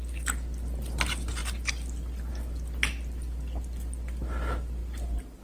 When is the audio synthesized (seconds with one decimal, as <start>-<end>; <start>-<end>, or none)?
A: none